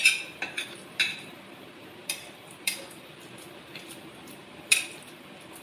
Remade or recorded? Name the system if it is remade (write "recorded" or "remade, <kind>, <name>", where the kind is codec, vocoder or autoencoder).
remade, vocoder, BigVGAN v2